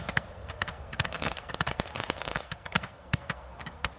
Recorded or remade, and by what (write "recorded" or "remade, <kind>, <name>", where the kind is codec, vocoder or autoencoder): remade, codec, SNAC